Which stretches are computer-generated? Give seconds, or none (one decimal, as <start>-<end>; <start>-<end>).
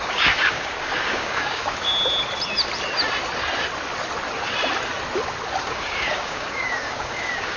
0.0-1.9; 5.6-7.6